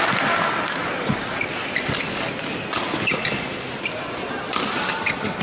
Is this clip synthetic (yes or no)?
no